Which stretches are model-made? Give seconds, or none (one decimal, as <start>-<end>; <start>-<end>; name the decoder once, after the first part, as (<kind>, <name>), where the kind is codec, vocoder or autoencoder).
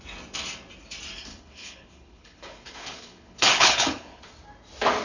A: 1.3-4.3 (codec, HILCodec)